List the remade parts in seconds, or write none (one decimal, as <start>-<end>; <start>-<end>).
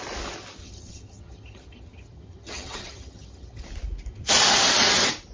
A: 0.6-3.6